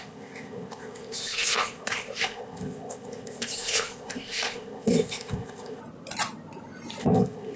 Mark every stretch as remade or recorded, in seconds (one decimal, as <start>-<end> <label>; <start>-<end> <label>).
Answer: 0.0-5.8 remade; 5.8-7.0 recorded; 7.0-7.6 remade